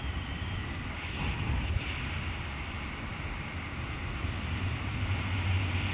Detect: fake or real real